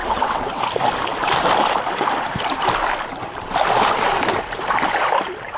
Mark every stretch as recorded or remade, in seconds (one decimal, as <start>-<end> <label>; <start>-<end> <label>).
0.0-0.6 remade; 0.6-5.6 recorded